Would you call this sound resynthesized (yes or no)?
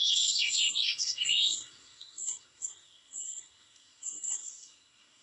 yes